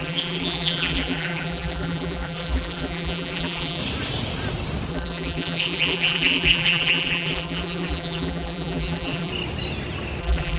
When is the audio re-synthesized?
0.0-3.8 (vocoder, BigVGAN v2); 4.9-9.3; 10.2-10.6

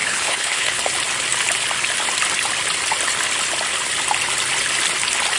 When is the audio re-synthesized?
0.0-0.8 (codec, HILCodec)